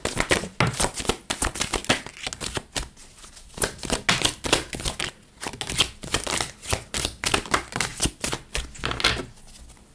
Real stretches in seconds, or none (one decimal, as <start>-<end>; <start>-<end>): 0.0-9.9